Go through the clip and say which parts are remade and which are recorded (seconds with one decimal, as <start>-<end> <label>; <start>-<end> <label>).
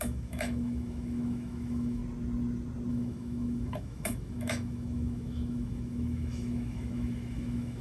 0.0-2.0 remade; 2.0-2.9 recorded; 2.9-7.8 remade